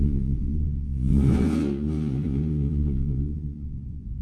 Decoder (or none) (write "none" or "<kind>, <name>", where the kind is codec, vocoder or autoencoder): vocoder, Vocos